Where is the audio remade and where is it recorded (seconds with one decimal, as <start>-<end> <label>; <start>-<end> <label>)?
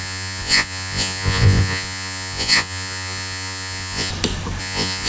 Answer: 0.0-4.1 remade; 4.1-4.6 recorded; 4.6-5.1 remade